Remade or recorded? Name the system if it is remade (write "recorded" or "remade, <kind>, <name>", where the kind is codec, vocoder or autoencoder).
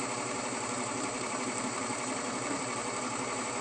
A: remade, vocoder, BigVGAN v2